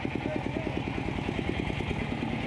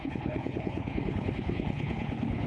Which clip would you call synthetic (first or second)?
second